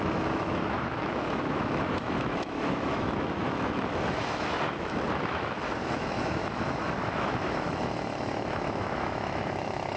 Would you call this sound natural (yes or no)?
no